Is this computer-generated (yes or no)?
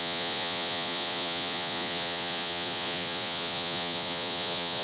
yes